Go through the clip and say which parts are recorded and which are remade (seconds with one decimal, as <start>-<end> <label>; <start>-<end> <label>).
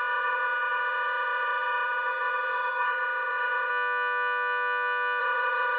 0.0-3.7 remade; 3.7-5.2 recorded; 5.2-5.8 remade